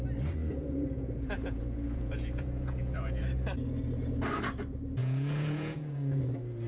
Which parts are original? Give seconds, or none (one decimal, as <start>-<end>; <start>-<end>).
0.0-0.4; 3.2-5.0; 6.2-6.7